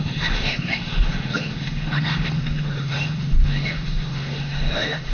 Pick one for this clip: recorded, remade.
remade